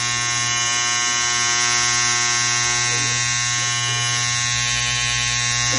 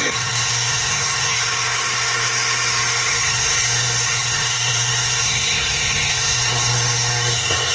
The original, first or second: first